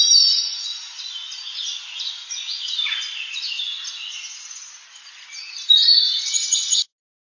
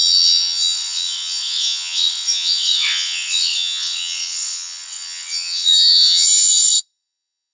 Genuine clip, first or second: first